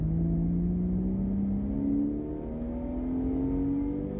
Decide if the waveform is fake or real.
real